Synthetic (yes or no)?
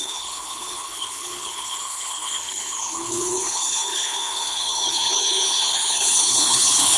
yes